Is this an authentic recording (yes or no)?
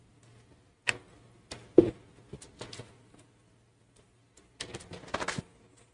yes